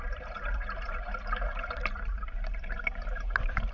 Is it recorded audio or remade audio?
remade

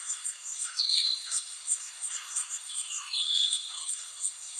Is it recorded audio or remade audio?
remade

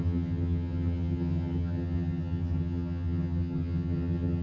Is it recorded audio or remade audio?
remade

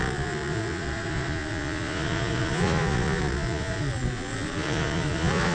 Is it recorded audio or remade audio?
remade